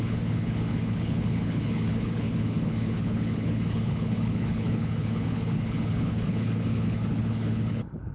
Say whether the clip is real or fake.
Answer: fake